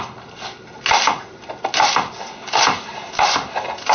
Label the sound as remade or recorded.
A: recorded